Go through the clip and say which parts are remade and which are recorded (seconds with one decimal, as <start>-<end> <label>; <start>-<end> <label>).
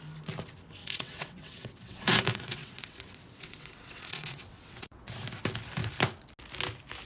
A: 0.0-0.8 recorded; 0.8-5.1 remade; 5.1-7.1 recorded